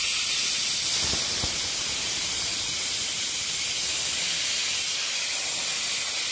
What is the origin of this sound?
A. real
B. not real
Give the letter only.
A